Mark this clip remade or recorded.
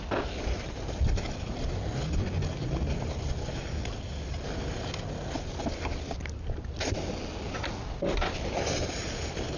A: recorded